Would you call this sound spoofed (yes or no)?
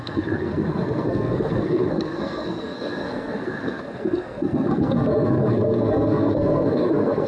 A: yes